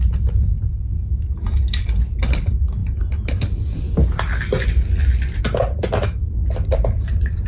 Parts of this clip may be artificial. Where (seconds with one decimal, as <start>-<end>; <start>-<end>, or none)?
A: none